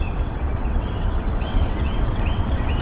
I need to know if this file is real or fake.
fake